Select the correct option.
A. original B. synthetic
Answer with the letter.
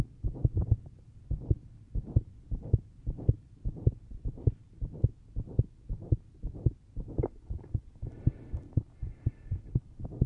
A